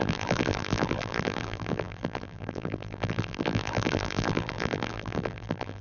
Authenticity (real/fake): fake